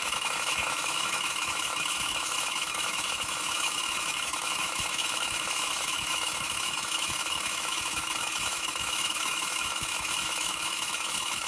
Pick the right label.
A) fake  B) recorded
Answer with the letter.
A